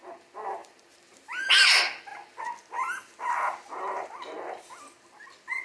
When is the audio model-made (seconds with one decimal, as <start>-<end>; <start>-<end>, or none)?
0.6-1.4